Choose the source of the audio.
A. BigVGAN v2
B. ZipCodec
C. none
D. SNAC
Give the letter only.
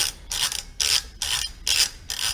C